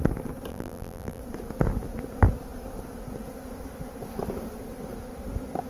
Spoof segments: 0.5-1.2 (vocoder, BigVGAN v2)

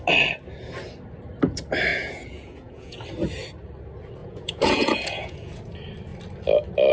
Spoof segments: 1.9-3.0 (vocoder, Vocos); 4.2-5.6